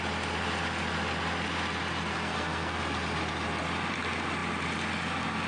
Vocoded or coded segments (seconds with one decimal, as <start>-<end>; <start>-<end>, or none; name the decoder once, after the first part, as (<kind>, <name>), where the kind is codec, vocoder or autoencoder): 2.1-2.8 (codec, SNAC)